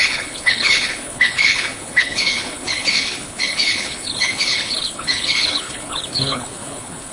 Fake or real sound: fake